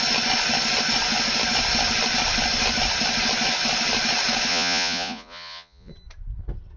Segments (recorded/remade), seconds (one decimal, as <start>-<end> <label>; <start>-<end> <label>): 0.0-4.5 recorded; 4.5-5.9 remade; 5.9-6.8 recorded